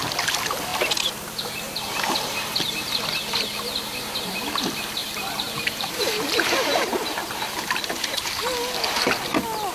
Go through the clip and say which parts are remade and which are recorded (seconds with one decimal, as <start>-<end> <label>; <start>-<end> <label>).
0.0-5.0 recorded; 5.0-8.3 remade; 8.3-9.7 recorded